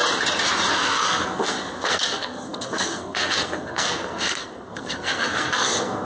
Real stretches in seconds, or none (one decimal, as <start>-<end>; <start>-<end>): 0.0-0.7